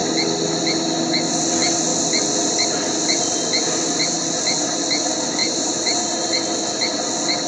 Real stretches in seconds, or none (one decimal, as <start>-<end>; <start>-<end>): 0.0-5.4; 6.3-7.5